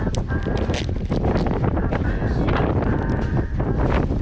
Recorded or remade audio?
recorded